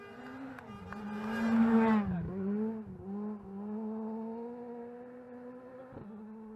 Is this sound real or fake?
real